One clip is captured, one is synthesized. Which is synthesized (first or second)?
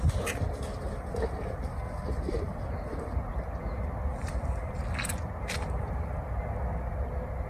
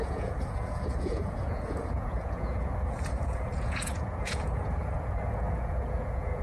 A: second